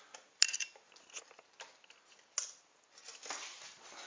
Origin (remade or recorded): recorded